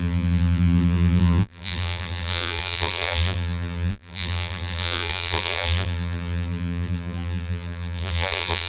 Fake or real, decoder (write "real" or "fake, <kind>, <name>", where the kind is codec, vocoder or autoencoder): fake, vocoder, BigVGAN v2